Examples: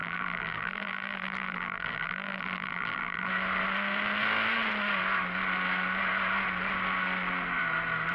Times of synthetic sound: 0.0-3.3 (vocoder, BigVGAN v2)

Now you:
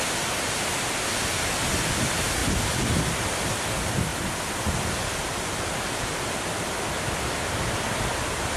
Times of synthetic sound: 2.4-3.1 (vocoder, BigVGAN v2); 4.1-8.6

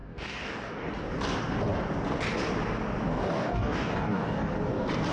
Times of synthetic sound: 0.0-0.9 (codec, DAC); 3.1-4.5

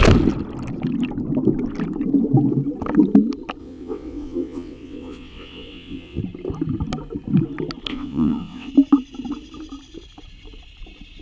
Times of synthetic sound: 3.6-6.2 (vocoder, WaveNeXt); 7.9-8.7

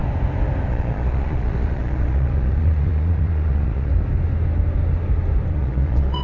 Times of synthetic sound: 0.7-3.9 (vocoder, Vocos); 5.5-6.2